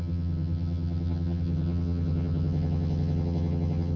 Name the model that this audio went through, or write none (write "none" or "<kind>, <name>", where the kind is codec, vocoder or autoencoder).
vocoder, HiFi-GAN